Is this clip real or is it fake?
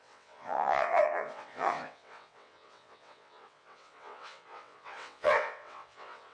fake